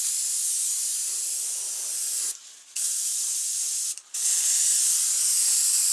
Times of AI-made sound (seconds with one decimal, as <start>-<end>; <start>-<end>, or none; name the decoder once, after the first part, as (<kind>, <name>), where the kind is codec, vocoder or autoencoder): none